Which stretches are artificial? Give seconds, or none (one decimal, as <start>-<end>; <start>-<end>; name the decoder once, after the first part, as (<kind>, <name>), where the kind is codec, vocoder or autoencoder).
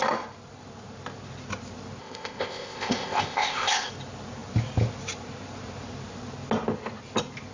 2.0-3.9 (codec, ZipCodec)